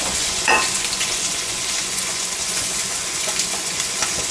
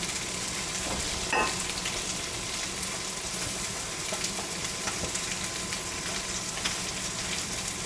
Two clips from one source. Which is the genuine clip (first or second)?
second